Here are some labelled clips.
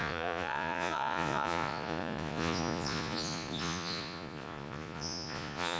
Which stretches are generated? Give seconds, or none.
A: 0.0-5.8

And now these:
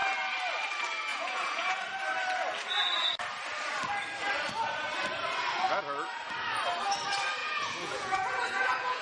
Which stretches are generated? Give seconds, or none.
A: 1.1-1.8; 7.4-9.0

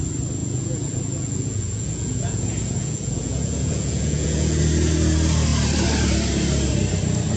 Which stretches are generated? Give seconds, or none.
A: 0.4-4.6